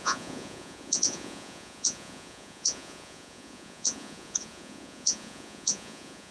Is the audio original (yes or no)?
no